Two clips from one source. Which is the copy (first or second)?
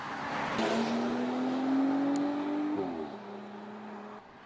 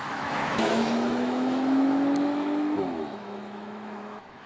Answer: second